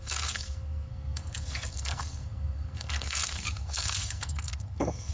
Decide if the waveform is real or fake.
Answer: fake